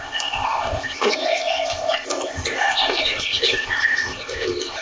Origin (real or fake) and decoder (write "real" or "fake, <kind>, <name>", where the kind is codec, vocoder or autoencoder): fake, codec, ZipCodec